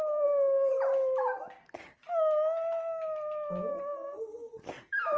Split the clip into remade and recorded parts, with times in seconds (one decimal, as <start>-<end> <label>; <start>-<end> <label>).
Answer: 0.0-0.7 remade; 0.7-3.8 recorded; 3.8-4.5 remade; 4.5-5.2 recorded